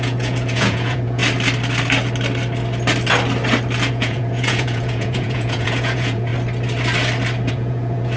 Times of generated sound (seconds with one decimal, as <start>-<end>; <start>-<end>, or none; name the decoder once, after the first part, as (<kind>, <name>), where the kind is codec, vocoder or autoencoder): 0.0-1.2 (vocoder, Vocos); 3.9-6.3; 7.5-8.2